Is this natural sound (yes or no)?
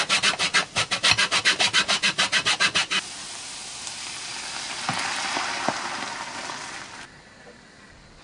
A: yes